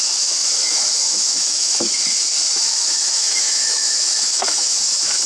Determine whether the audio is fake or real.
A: fake